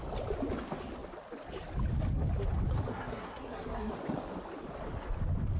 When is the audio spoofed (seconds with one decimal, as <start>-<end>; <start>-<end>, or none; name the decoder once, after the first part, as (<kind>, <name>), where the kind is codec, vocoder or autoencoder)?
2.9-3.9 (codec, SNAC)